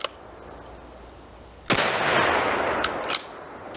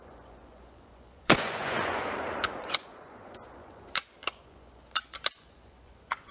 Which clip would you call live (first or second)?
first